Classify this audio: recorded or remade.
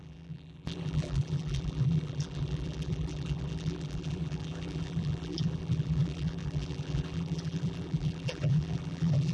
remade